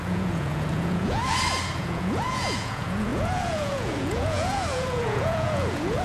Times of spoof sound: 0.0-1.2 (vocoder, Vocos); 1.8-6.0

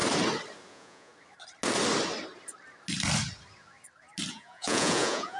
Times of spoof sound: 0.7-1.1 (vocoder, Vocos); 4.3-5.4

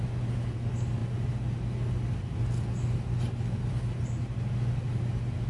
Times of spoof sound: none